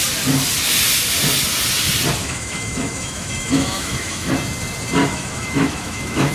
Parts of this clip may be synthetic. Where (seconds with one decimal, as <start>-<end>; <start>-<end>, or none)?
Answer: 2.2-4.3; 5.0-6.3

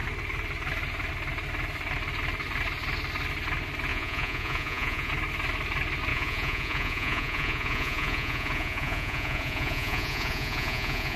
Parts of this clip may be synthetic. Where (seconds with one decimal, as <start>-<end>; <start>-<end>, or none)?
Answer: 3.9-5.1; 6.1-11.2

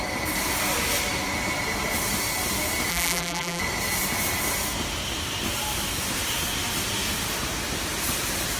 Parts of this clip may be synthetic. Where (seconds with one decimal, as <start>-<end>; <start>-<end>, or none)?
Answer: 2.9-3.6

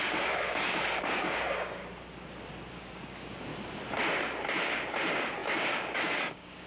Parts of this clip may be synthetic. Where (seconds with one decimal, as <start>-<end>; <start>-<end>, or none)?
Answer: 0.0-1.8; 2.7-3.5; 4.5-6.7

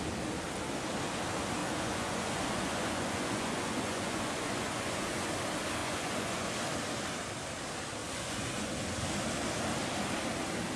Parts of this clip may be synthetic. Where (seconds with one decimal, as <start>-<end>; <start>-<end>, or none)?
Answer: 1.6-5.3; 5.8-6.5; 8.0-8.7